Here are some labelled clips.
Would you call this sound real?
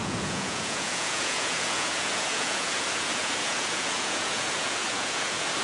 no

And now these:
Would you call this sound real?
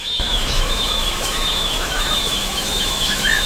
no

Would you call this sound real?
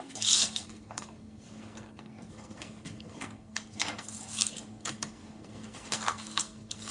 no